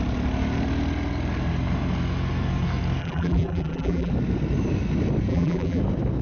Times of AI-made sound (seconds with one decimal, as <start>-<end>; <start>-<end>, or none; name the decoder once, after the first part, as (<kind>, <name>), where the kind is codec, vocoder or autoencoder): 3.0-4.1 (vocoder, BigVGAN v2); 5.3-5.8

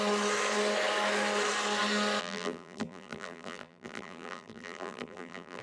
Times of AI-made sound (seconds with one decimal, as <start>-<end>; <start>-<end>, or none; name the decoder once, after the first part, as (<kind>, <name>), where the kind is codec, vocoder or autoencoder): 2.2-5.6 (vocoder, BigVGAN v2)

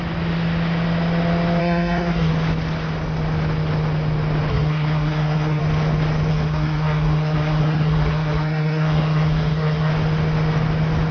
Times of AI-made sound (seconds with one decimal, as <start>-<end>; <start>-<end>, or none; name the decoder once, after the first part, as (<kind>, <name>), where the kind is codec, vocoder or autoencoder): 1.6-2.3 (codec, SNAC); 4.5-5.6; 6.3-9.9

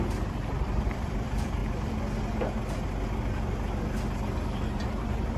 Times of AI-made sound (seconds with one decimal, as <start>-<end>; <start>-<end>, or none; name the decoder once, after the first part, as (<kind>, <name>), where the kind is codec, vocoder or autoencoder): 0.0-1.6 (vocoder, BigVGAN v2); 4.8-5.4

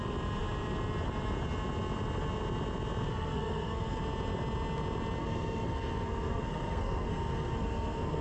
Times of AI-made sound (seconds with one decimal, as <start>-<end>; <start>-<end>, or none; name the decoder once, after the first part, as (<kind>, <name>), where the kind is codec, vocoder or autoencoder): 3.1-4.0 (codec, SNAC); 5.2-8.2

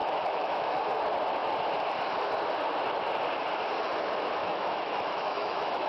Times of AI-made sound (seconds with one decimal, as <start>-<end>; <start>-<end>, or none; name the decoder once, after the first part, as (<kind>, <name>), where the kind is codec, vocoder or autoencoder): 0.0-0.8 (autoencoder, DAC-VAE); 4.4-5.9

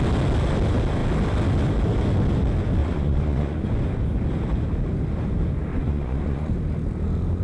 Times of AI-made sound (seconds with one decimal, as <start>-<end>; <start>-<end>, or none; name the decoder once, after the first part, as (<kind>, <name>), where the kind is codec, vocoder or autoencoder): 2.8-3.7 (vocoder, Vocos); 5.7-6.5